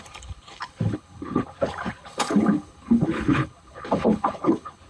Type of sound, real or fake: fake